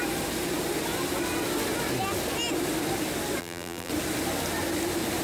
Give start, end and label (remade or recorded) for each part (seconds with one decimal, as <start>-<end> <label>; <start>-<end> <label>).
0.0-3.4 recorded; 3.4-3.9 remade; 3.9-5.2 recorded